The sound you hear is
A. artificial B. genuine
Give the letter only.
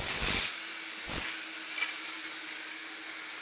B